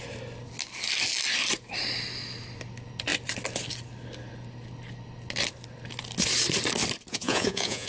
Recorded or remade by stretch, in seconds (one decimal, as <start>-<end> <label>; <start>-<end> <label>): 0.0-7.1 recorded; 7.1-7.9 remade